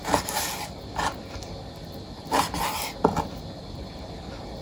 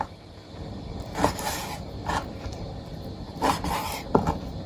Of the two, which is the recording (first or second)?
first